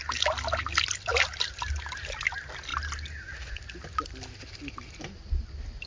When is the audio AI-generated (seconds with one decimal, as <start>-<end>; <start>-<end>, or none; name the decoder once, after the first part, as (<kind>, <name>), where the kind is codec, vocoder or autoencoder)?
none